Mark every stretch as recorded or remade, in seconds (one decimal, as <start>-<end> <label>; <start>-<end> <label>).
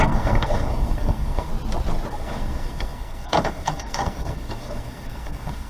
0.0-1.5 remade; 1.5-2.1 recorded; 2.1-5.7 remade